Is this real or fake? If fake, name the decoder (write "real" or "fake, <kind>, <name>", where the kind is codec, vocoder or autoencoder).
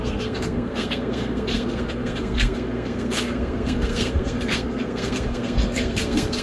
fake, codec, SNAC